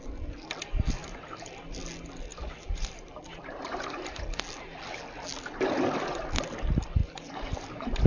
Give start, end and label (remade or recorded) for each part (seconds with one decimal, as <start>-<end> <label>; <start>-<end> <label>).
0.0-1.0 recorded; 1.0-1.5 remade; 1.5-2.3 recorded; 2.3-4.2 remade; 4.2-7.0 recorded; 7.0-8.1 remade

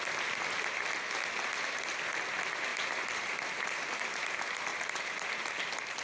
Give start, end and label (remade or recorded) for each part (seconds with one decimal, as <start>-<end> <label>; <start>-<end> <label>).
0.0-2.7 recorded; 2.7-4.1 remade; 4.1-4.7 recorded; 4.7-5.3 remade; 5.3-6.0 recorded

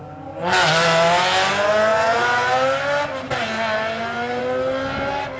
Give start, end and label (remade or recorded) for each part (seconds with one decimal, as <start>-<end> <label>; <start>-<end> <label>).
0.0-5.4 recorded

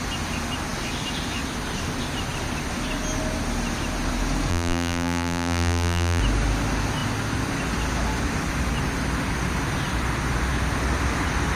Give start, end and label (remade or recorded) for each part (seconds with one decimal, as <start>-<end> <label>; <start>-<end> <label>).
0.0-4.5 recorded; 4.5-6.2 remade; 6.2-11.6 recorded

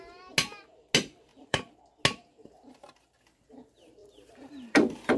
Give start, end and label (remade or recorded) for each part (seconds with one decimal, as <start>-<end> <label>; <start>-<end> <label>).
0.0-1.3 recorded; 1.3-1.8 remade; 1.8-4.0 recorded; 4.0-5.2 remade

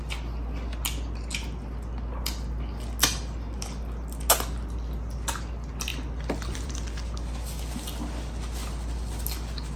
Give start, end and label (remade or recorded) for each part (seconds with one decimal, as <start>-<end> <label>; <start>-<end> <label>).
0.0-5.9 recorded; 5.9-6.7 remade; 6.7-9.8 recorded

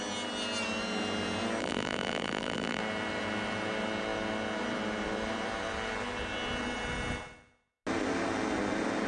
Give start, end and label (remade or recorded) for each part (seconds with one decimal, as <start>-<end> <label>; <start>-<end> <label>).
0.0-1.6 recorded; 1.6-2.8 remade; 2.8-9.1 recorded

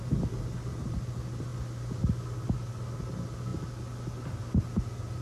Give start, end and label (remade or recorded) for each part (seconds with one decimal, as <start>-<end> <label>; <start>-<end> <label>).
0.0-5.2 recorded